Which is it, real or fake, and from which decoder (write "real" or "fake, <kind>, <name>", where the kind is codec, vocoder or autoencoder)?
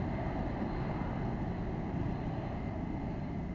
real